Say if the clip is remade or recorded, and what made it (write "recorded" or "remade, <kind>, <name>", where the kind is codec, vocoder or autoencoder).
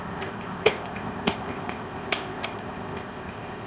remade, codec, ZipCodec